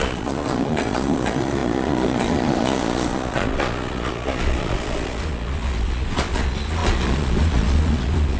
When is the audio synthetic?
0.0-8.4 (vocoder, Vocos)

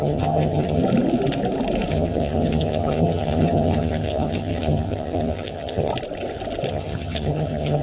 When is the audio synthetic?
0.0-0.8 (vocoder, HiFi-GAN); 1.9-5.9; 6.7-7.8

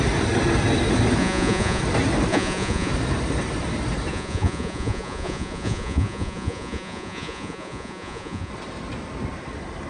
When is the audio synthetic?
1.2-1.8 (vocoder, Vocos); 2.3-2.9; 4.1-8.5

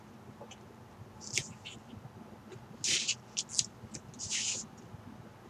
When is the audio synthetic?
none

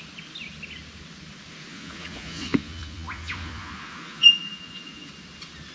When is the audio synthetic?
1.7-5.1 (vocoder, Vocos)

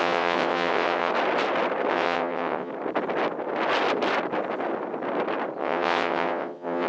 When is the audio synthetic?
0.0-1.1 (vocoder, WaveNeXt); 1.9-2.7; 5.6-6.9

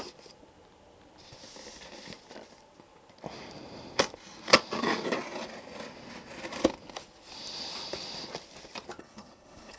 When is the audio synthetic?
9.0-9.8 (codec, HILCodec)

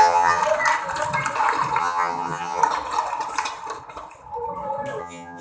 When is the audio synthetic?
0.0-0.4 (vocoder, HiFi-GAN); 1.8-2.6; 5.0-5.4